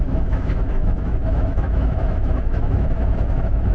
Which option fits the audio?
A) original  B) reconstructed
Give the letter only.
B